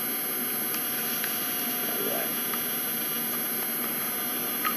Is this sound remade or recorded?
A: recorded